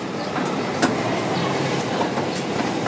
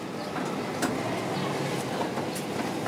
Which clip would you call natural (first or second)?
second